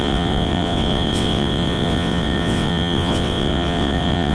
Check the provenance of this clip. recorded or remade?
remade